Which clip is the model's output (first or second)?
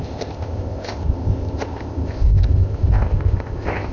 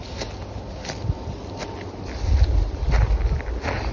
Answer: first